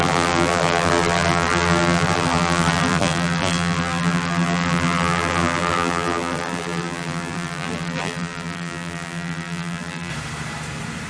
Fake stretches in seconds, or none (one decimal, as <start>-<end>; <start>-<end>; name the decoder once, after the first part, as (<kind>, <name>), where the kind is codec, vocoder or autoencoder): 0.0-10.1 (vocoder, BigVGAN v2)

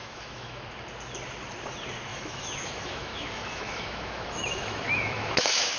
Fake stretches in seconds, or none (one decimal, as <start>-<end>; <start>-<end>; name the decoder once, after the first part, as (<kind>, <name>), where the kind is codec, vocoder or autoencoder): 0.0-0.6 (autoencoder, DAC-VAE); 2.1-5.8

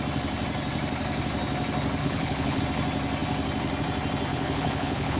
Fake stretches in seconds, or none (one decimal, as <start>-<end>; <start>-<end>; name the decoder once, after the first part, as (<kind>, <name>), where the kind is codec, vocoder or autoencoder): 2.0-2.6 (codec, HILCodec); 4.3-5.2

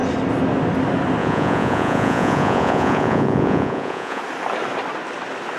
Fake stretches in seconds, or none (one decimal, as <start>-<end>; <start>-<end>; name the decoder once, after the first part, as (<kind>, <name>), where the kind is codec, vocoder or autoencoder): 1.2-4.2 (vocoder, Vocos)

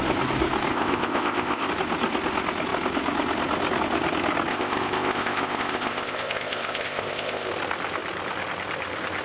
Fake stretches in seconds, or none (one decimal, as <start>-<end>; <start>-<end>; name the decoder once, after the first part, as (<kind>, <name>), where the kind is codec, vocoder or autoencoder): 0.7-1.7 (codec, ZipCodec); 4.5-7.5